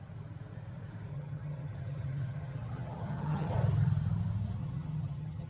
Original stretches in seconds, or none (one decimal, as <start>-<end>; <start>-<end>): 0.0-1.1; 3.5-4.6